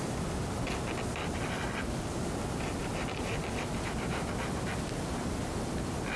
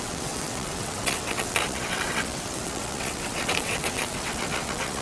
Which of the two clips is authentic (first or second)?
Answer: first